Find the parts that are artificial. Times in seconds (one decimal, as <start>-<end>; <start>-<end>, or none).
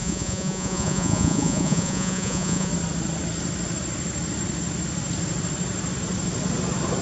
0.0-2.7